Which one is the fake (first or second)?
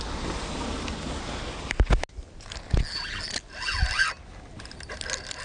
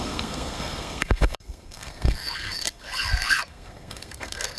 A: second